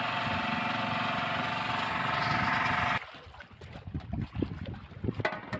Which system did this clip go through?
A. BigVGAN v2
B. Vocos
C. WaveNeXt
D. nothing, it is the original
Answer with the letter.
D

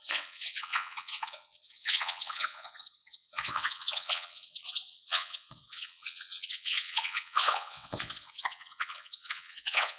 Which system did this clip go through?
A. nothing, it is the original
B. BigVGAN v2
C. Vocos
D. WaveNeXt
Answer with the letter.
D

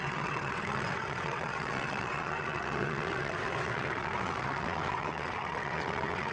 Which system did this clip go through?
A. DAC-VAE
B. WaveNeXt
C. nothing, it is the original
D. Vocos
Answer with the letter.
B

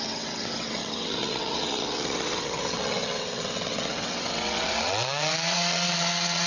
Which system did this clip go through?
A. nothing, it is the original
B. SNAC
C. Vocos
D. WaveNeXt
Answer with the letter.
D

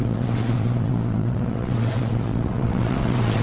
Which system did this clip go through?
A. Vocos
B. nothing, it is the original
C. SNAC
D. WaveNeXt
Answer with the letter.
D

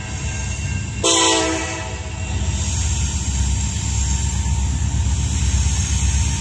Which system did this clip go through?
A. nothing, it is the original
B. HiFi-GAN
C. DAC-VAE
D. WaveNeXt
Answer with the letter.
A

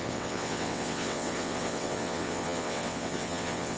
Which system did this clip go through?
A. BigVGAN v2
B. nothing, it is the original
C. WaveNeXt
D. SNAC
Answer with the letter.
C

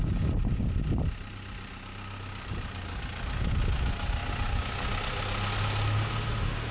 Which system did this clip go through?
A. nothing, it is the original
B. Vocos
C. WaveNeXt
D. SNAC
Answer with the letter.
A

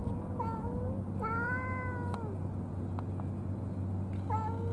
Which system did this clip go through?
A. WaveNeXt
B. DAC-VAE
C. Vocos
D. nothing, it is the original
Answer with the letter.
D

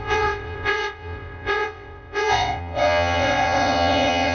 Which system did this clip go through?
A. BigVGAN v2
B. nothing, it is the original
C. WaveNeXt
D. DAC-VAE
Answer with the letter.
C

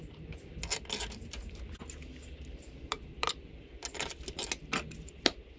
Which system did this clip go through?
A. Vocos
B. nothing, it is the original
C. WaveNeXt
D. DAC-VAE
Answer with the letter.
B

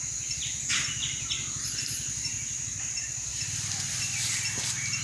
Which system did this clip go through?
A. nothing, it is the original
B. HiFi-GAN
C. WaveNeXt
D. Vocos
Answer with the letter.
A